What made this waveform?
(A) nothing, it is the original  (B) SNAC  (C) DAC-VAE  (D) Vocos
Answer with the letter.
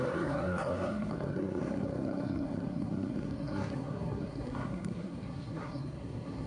B